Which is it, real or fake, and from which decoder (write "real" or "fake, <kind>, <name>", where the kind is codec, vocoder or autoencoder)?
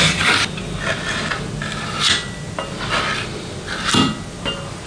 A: real